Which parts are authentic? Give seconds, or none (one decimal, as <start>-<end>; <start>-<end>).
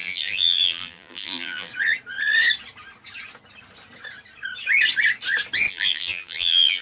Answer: 1.7-5.7